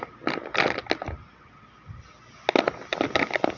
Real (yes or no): yes